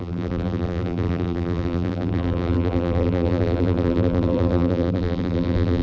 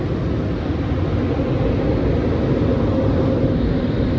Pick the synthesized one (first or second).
first